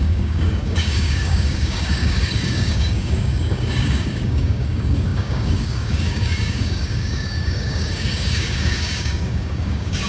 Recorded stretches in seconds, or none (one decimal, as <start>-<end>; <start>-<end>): none